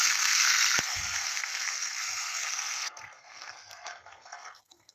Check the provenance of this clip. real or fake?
fake